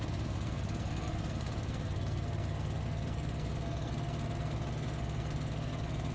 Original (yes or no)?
no